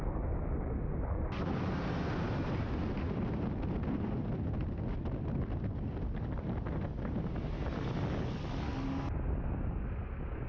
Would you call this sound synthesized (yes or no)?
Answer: no